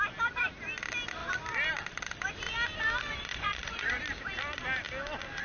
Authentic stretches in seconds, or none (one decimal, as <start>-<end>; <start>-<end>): 0.0-3.3; 4.0-5.4